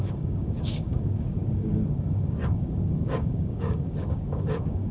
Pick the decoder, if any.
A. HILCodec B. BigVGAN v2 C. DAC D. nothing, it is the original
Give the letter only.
C